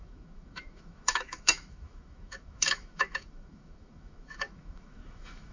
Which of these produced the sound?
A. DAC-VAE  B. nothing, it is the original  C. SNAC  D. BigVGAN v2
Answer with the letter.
A